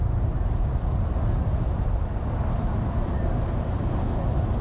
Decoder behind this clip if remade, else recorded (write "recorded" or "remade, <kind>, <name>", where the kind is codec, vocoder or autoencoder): recorded